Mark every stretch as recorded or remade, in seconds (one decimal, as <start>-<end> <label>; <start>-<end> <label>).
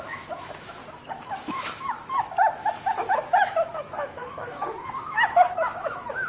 0.0-0.8 remade; 0.8-1.4 recorded; 1.4-6.3 remade